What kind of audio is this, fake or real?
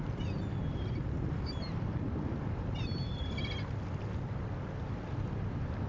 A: real